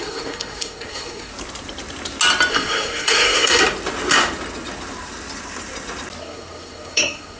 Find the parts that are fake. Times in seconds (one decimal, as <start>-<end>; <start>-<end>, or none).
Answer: 0.0-1.3; 2.5-3.6; 6.2-7.4